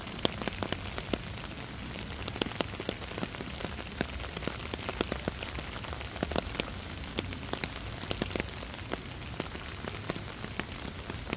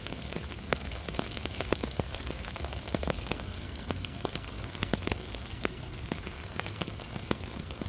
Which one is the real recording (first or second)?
first